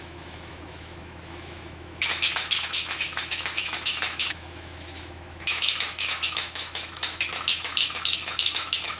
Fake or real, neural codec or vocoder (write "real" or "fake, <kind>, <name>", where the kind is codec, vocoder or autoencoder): fake, autoencoder, DAC-VAE